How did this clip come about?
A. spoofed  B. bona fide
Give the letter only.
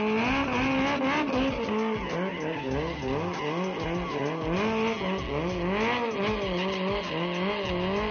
B